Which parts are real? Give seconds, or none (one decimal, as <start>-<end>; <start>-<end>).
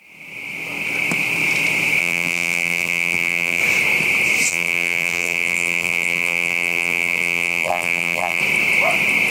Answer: 0.0-2.0; 3.6-4.5; 8.4-9.3